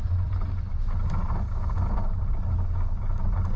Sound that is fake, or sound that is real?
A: real